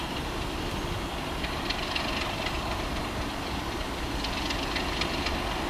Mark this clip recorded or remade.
recorded